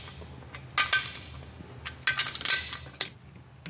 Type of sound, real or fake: real